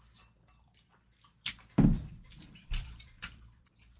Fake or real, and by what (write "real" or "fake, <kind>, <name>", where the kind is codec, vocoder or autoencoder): fake, vocoder, BigVGAN v2